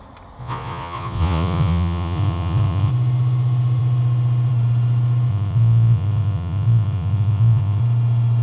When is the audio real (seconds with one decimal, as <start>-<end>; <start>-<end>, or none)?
0.0-0.4; 2.9-5.3; 7.8-8.4